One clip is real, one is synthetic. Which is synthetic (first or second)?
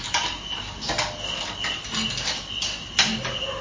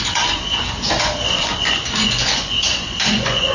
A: second